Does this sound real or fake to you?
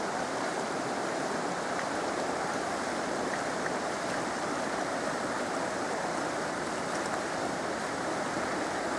fake